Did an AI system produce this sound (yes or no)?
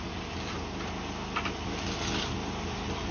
no